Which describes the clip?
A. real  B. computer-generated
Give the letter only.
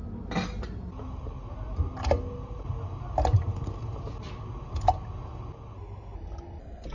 A